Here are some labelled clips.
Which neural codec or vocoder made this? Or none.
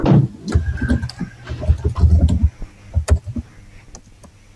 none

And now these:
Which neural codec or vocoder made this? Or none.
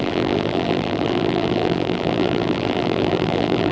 vocoder, BigVGAN v2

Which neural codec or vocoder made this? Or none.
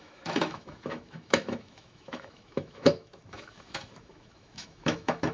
autoencoder, DAC-VAE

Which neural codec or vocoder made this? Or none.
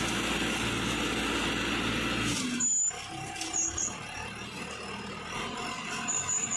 none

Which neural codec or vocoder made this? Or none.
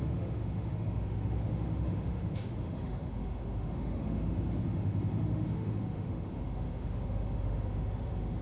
autoencoder, DAC-VAE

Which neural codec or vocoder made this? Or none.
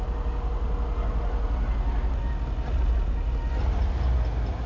none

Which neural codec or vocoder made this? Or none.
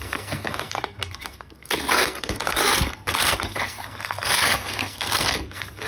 codec, SNAC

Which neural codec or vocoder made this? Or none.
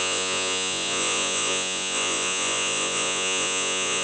vocoder, Vocos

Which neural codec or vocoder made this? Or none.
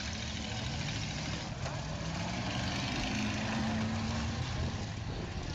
none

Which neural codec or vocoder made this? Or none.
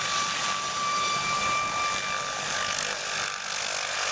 none